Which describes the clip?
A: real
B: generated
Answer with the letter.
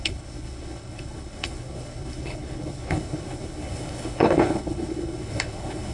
B